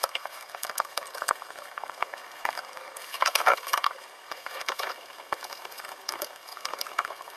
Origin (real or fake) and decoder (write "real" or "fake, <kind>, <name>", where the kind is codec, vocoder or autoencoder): fake, codec, SNAC